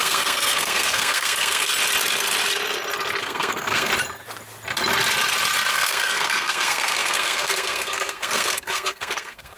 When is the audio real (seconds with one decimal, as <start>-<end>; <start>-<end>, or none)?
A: 1.7-3.2; 3.9-5.7